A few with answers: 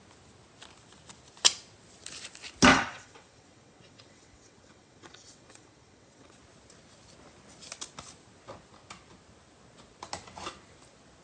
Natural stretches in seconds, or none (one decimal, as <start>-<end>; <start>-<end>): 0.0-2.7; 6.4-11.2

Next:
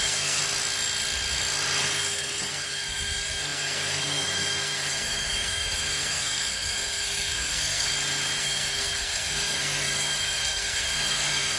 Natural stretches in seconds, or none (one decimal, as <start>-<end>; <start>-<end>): 0.4-1.8; 7.9-8.4

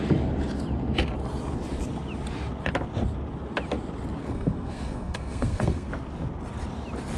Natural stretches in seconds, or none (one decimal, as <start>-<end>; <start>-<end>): 0.0-4.2; 5.9-7.2